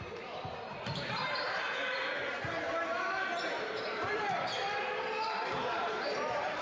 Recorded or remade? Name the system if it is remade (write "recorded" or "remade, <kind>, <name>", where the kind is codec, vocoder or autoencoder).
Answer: remade, vocoder, BigVGAN v2